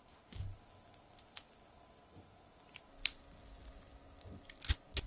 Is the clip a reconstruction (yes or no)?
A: yes